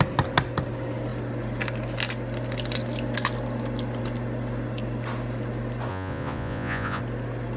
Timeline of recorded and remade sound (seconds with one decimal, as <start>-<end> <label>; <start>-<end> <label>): 0.0-5.9 recorded; 5.9-7.0 remade; 7.0-7.6 recorded